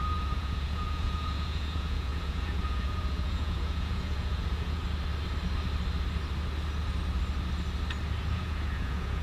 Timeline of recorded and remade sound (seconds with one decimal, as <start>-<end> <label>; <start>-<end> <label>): 0.0-4.8 remade; 4.8-8.3 recorded; 8.3-9.2 remade